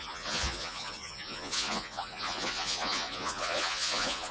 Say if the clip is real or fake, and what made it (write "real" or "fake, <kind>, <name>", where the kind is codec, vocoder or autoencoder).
fake, vocoder, Vocos